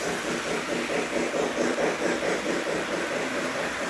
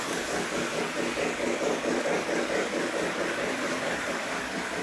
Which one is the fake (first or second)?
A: second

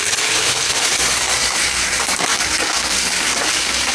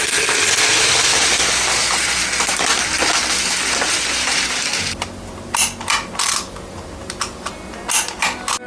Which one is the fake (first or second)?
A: first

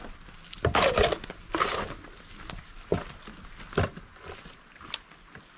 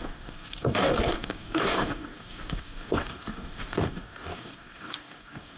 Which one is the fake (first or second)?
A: second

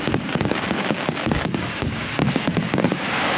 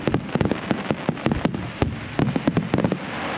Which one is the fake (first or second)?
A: first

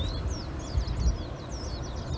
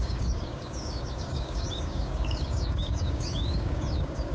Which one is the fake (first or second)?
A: second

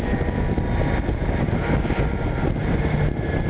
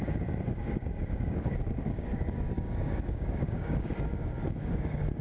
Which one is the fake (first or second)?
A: second